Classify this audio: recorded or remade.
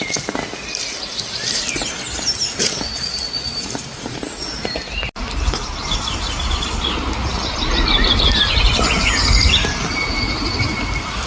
recorded